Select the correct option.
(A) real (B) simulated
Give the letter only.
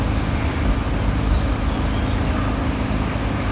A